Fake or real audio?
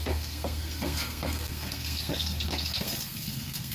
fake